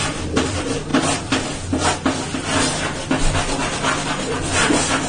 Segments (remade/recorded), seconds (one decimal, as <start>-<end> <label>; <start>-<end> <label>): 0.0-5.1 recorded